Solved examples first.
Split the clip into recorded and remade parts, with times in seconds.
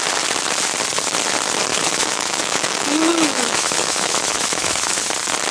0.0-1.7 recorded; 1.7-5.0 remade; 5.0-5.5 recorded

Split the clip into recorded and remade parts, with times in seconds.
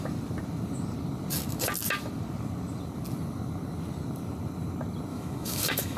0.0-5.1 recorded; 5.1-6.0 remade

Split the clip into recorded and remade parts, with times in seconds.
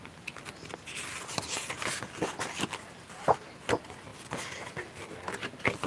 0.0-5.9 recorded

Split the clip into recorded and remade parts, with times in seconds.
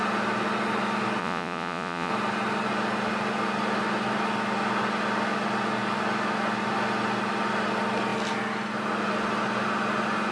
0.0-1.2 recorded; 1.2-2.1 remade; 2.1-10.3 recorded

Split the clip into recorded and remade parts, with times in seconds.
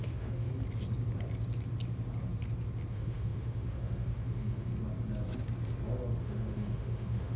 0.0-0.5 remade; 0.5-2.9 recorded; 2.9-4.7 remade; 4.7-6.2 recorded; 6.2-7.4 remade